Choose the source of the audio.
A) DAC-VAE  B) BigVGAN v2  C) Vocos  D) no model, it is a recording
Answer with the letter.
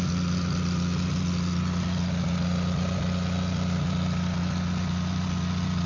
D